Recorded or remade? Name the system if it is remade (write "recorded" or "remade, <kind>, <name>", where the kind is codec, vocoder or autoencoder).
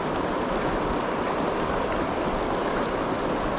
recorded